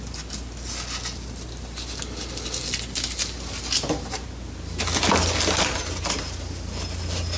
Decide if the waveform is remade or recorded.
recorded